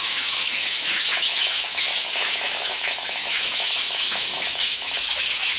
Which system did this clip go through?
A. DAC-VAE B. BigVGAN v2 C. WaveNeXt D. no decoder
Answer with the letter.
A